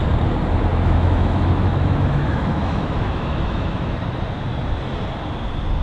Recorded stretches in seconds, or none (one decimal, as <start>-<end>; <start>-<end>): 0.0-0.7; 3.9-5.8